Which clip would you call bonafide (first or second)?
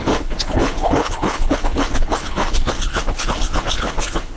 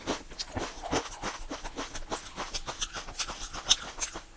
second